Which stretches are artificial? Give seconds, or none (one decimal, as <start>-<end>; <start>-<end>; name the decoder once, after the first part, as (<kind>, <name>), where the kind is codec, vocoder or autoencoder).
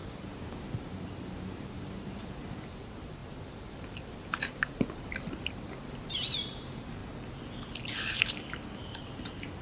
0.8-3.2 (vocoder, BigVGAN v2); 3.7-7.0; 8.5-9.6